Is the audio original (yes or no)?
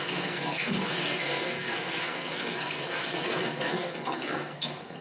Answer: no